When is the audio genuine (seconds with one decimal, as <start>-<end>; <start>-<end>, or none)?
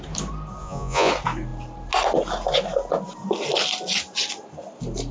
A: 0.0-0.6; 1.1-5.1